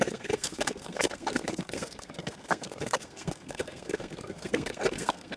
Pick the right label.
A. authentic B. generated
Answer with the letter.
B